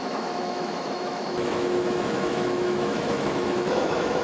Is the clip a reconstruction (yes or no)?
yes